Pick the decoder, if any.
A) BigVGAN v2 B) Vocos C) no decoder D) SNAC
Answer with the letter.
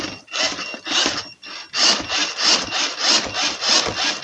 C